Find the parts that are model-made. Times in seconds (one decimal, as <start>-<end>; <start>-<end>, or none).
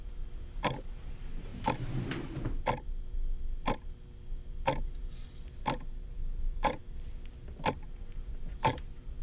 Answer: 0.0-1.5; 6.1-6.8; 7.7-9.2